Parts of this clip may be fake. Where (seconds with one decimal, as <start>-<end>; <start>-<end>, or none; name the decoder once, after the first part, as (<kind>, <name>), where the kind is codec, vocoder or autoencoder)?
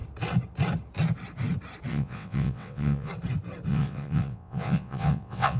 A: 1.9-3.1 (vocoder, WaveNeXt); 3.7-5.6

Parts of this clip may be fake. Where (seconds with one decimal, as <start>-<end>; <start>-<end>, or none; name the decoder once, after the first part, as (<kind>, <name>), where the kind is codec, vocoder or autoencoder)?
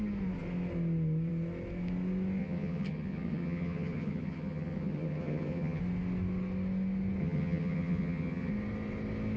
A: 2.4-5.8 (vocoder, HiFi-GAN); 7.2-8.5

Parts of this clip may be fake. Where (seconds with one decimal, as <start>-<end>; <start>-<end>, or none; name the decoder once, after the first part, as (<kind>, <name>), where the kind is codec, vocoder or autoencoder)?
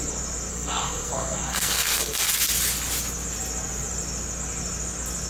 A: 0.5-2.3 (codec, SNAC)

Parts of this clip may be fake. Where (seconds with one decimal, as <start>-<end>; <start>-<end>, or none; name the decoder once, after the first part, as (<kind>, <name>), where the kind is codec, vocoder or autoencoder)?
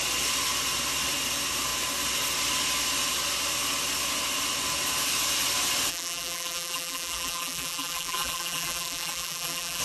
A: 5.9-9.8 (vocoder, BigVGAN v2)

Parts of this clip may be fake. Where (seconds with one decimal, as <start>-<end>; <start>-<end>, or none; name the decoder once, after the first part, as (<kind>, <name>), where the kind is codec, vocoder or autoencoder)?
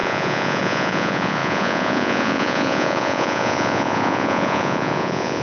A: 0.0-5.4 (vocoder, Vocos)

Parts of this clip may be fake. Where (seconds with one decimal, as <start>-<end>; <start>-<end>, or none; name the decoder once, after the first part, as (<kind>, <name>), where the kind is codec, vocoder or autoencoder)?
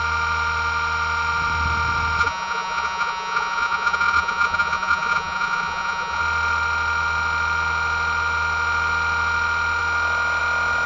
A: 2.2-6.2 (vocoder, Vocos)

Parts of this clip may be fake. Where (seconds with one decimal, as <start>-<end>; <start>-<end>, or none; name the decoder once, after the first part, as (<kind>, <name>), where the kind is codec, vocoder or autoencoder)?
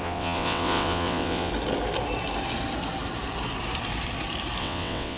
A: 0.0-1.5 (vocoder, WaveNeXt); 4.6-5.2